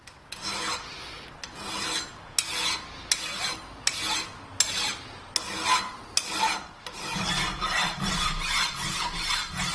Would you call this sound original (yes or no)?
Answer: yes